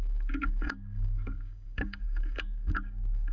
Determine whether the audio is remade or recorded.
remade